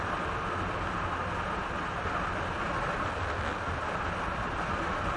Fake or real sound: real